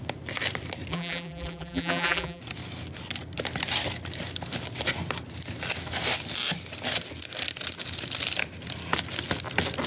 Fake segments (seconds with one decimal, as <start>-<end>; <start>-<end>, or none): 0.9-2.4